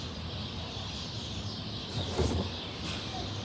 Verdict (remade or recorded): recorded